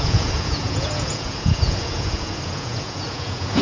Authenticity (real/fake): fake